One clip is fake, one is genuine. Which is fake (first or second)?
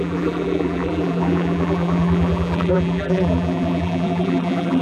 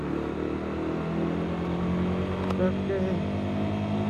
first